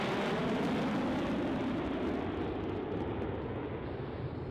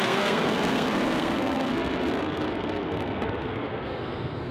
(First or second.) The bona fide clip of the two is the first